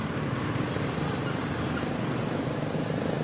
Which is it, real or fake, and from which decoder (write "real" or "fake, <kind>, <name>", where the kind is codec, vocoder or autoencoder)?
real